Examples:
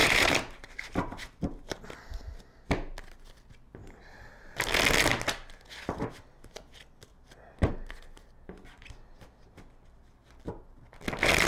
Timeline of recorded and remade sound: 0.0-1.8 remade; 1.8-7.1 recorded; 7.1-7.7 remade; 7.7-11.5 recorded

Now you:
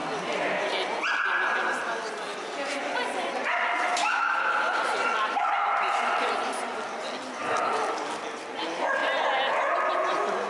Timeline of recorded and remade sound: 0.0-2.3 recorded; 2.3-3.3 remade; 3.3-3.9 recorded; 3.9-5.5 remade; 5.5-10.5 recorded